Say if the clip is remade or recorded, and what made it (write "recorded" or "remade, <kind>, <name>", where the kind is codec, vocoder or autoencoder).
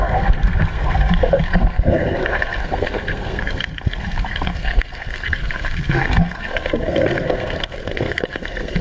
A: remade, codec, SNAC